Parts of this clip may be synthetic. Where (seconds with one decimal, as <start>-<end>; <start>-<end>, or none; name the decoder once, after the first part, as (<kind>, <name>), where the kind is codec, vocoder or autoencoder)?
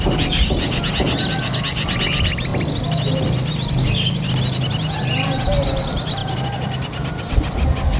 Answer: none